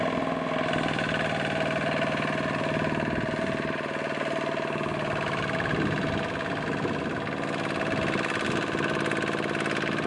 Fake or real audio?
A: real